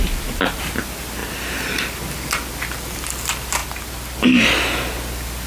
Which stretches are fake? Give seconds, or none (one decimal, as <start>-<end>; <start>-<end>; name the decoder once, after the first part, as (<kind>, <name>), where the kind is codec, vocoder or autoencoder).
none